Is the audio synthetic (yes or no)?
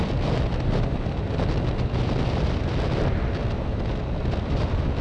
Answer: no